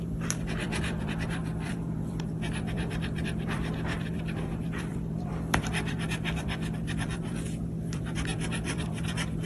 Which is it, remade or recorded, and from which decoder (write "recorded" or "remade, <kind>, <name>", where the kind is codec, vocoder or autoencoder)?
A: remade, vocoder, BigVGAN v2